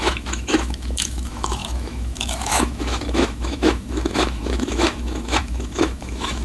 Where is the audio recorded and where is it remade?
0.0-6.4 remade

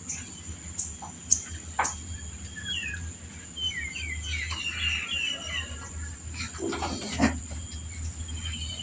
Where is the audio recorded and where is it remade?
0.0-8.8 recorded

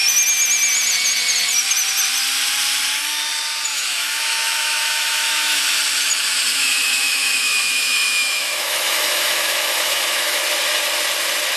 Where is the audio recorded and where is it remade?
0.0-3.7 recorded; 3.7-5.6 remade; 5.6-6.5 recorded; 6.5-10.4 remade; 10.4-11.6 recorded

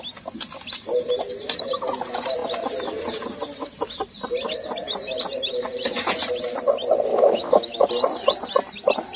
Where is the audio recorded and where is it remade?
0.0-7.1 recorded; 7.1-7.9 remade; 7.9-9.2 recorded

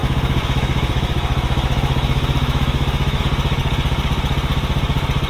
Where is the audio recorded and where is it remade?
0.0-3.2 remade; 3.2-5.3 recorded

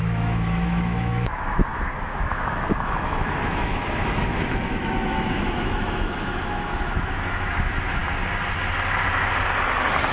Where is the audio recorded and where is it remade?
0.0-8.0 remade; 8.0-10.1 recorded